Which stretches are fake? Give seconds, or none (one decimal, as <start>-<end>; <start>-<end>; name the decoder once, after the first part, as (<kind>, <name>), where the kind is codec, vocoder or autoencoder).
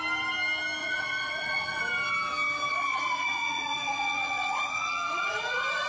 0.8-1.8 (vocoder, Vocos); 2.7-5.9